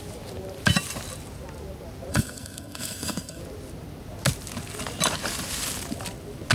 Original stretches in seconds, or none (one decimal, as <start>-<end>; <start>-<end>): 0.0-2.1; 3.4-6.5